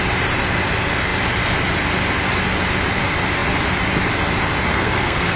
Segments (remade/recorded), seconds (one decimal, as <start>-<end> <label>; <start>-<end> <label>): 0.0-4.7 recorded; 4.7-5.4 remade